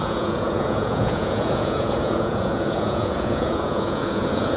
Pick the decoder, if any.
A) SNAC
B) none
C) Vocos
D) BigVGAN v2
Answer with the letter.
C